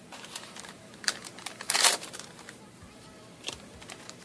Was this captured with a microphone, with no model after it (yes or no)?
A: no